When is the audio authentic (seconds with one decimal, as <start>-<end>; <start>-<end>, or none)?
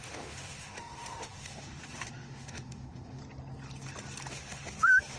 3.2-4.3